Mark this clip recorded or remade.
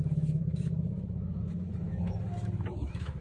remade